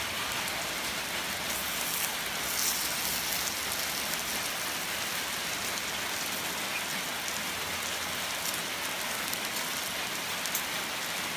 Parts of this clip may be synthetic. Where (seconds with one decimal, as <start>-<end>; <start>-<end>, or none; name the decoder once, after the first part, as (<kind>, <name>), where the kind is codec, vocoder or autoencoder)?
none